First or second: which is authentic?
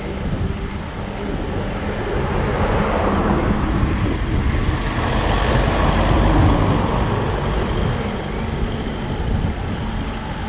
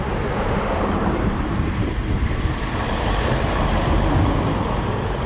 first